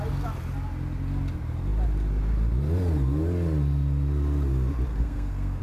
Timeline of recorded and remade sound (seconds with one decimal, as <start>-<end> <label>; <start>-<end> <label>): 0.0-4.9 recorded; 4.9-5.6 remade